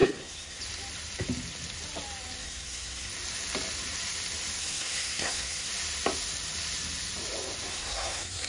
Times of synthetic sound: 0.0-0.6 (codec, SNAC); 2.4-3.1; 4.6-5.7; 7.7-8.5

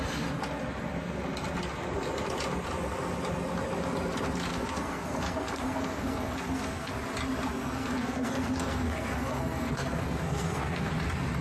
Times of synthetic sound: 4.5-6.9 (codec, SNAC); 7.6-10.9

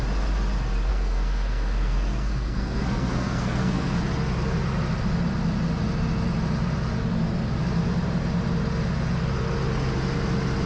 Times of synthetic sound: 0.9-4.0 (codec, SNAC)